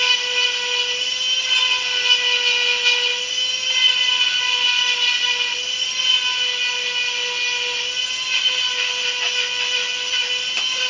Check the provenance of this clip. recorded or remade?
recorded